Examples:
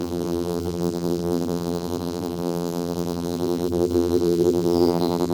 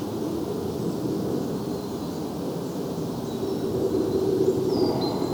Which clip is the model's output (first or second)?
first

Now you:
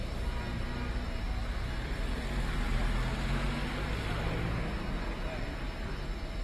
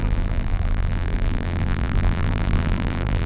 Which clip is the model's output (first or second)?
second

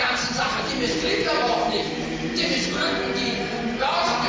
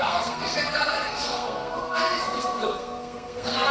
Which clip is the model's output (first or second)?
second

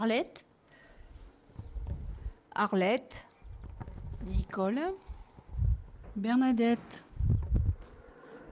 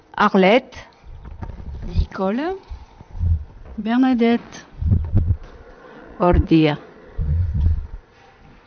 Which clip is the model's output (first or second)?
second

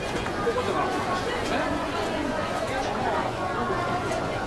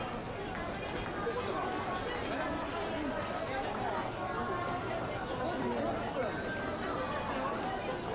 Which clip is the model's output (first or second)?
first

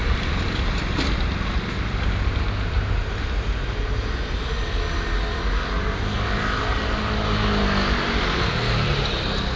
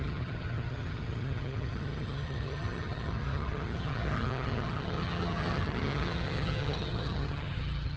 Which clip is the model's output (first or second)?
second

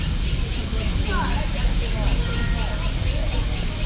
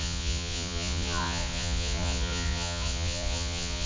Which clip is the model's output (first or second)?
second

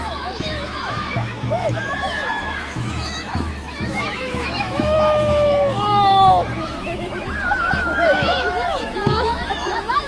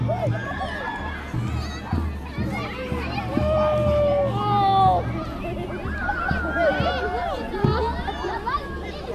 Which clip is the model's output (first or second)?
first